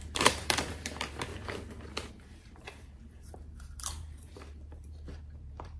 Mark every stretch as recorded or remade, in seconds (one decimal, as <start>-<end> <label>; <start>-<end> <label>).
0.0-1.3 remade; 1.3-2.1 recorded; 2.1-5.8 remade